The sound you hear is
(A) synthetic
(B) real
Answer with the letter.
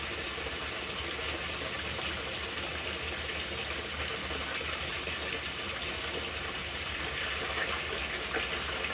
B